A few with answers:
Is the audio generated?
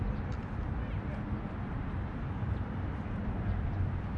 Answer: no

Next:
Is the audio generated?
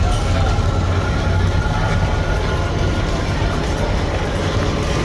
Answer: no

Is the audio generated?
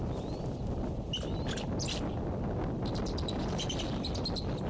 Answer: no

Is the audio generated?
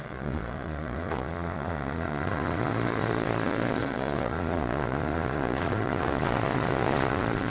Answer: yes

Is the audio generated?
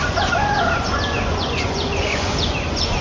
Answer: yes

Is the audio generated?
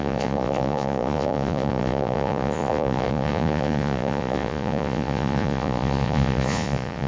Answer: yes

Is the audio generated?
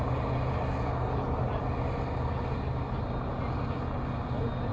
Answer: no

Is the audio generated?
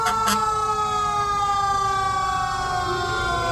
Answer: no